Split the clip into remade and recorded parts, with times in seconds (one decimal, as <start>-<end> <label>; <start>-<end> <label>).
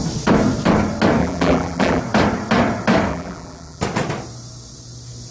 0.0-1.2 recorded; 1.2-2.0 remade; 2.0-3.1 recorded; 3.1-3.8 remade; 3.8-5.3 recorded